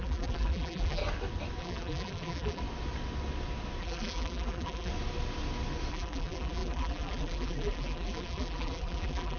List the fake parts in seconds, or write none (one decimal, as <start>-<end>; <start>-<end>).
0.0-1.0; 1.6-2.6; 3.8-4.9; 5.9-9.4